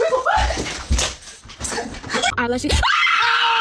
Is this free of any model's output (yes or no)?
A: yes